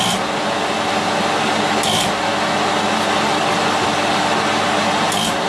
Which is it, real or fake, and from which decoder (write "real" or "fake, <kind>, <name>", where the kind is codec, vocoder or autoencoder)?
real